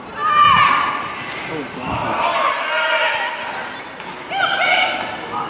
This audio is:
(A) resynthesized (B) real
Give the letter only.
B